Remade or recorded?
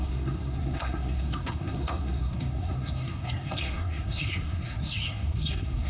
remade